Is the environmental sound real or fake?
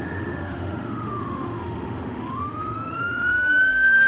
fake